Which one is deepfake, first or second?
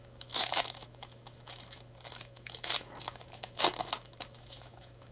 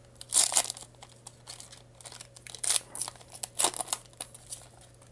first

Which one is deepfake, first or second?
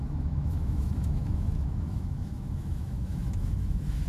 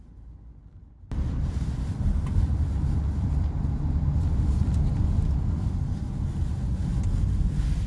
first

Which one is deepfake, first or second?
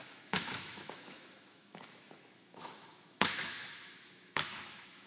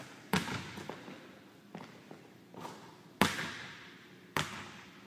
first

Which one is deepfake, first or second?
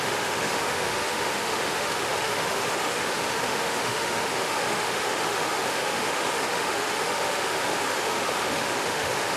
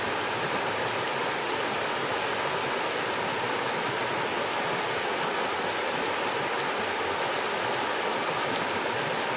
first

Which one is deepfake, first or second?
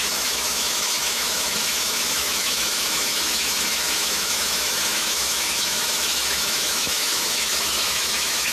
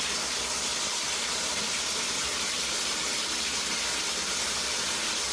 first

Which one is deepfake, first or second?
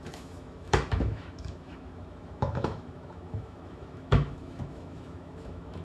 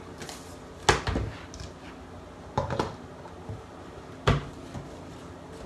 first